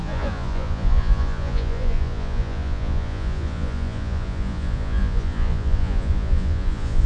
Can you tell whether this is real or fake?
fake